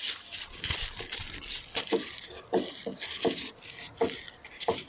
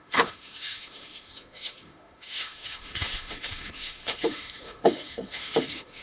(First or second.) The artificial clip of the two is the second